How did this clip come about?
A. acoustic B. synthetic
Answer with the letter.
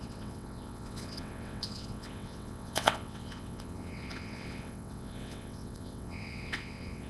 B